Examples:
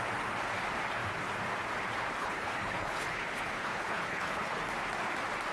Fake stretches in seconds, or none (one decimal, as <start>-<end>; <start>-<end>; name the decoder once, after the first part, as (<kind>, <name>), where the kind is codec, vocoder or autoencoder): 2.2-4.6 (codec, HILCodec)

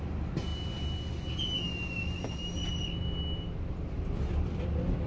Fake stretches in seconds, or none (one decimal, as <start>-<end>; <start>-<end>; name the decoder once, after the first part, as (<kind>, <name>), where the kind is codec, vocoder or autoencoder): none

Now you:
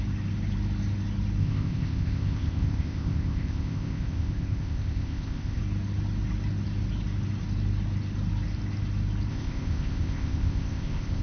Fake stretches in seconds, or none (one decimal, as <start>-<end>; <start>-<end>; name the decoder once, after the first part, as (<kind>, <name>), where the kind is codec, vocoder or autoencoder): 1.4-5.6 (codec, ZipCodec); 9.3-11.2

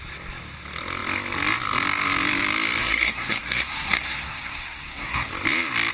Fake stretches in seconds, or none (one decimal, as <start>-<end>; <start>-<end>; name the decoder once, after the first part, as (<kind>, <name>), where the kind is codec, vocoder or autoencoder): 2.8-5.3 (codec, SNAC)